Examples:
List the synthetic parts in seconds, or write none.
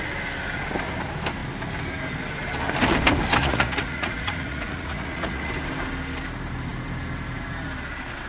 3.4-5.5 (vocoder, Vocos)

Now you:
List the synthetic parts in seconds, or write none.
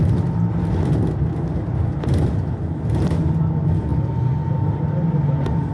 none